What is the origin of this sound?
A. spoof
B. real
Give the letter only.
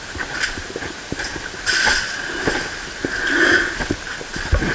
B